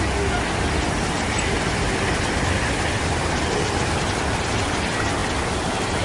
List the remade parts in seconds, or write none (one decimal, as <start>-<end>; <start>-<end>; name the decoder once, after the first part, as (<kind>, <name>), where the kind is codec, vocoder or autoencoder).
none